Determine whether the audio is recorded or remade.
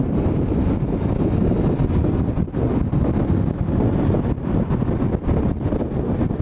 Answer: recorded